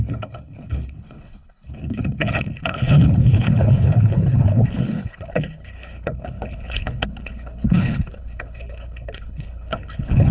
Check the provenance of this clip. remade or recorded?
remade